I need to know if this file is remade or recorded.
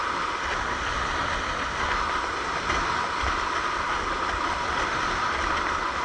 recorded